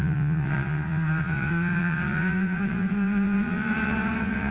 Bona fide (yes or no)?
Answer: no